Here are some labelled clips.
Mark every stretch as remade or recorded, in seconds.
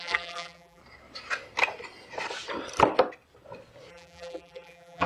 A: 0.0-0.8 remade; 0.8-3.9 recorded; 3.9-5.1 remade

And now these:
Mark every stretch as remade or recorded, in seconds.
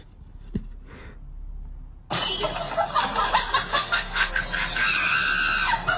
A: 0.0-3.7 recorded; 3.7-4.3 remade; 4.3-6.0 recorded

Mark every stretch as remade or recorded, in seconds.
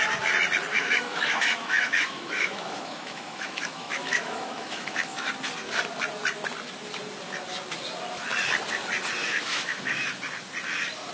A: 0.0-0.7 recorded; 0.7-5.3 remade; 5.3-9.2 recorded; 9.2-10.1 remade; 10.1-11.1 recorded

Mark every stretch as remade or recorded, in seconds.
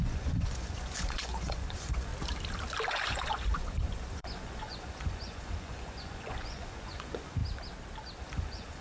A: 0.0-2.1 remade; 2.1-2.9 recorded; 2.9-7.4 remade; 7.4-8.2 recorded; 8.2-8.8 remade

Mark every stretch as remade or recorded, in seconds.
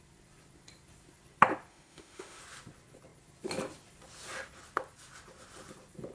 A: 0.0-1.7 recorded; 1.7-2.4 remade; 2.4-6.1 recorded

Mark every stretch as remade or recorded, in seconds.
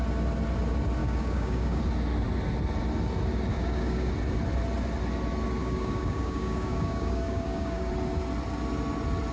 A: 0.0-1.0 recorded; 1.0-1.8 remade; 1.8-3.5 recorded; 3.5-4.1 remade; 4.1-5.6 recorded; 5.6-7.9 remade; 7.9-9.3 recorded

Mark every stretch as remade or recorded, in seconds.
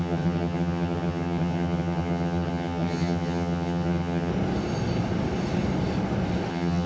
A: 0.0-4.3 remade; 4.3-6.5 recorded; 6.5-6.9 remade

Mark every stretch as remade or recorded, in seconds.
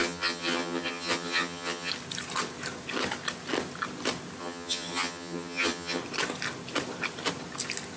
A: 0.0-1.9 remade; 1.9-4.4 recorded; 4.4-6.0 remade; 6.0-8.0 recorded